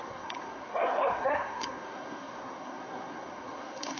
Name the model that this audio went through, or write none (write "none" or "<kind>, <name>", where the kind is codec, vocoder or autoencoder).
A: codec, SNAC